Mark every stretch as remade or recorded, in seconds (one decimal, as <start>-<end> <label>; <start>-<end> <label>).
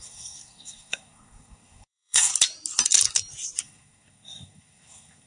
0.0-2.3 remade; 2.3-3.6 recorded; 3.6-5.3 remade